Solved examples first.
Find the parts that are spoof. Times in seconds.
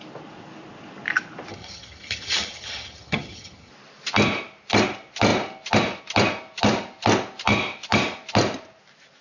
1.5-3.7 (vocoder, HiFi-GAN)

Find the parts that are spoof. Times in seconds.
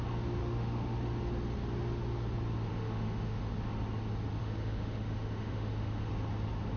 0.4-1.0 (autoencoder, DAC-VAE); 2.7-3.4; 4.4-6.1